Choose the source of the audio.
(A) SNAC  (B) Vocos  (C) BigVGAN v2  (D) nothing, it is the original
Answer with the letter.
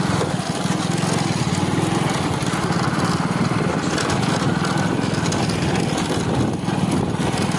D